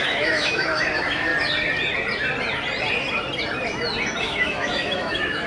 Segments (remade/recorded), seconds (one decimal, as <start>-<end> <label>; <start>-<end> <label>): 0.0-1.3 remade; 1.3-4.2 recorded; 4.2-5.5 remade